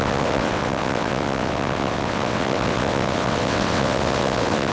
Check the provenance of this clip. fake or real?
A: fake